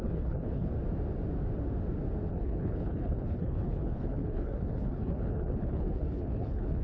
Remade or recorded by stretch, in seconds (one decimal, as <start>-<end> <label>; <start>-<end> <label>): 0.0-0.7 remade; 0.7-2.3 recorded; 2.3-6.8 remade